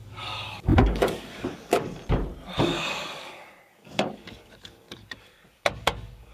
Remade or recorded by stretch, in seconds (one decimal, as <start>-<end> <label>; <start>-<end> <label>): 0.0-2.0 remade; 2.0-2.6 recorded; 2.6-6.3 remade